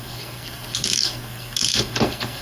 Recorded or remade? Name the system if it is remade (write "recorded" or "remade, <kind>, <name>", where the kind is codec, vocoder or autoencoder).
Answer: remade, codec, SNAC